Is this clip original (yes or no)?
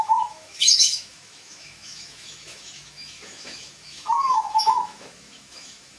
no